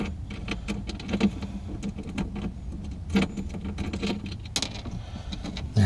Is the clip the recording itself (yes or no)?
yes